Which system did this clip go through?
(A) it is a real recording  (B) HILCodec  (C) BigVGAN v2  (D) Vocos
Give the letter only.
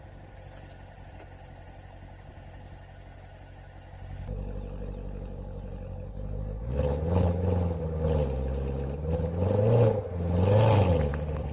A